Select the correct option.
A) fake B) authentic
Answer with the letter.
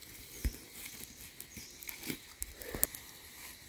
B